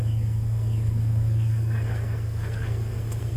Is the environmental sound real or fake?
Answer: fake